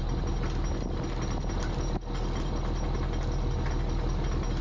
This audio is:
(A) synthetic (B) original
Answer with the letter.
B